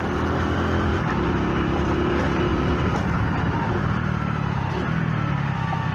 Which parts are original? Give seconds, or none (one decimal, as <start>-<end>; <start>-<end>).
0.0-0.9; 2.1-2.5; 4.7-5.9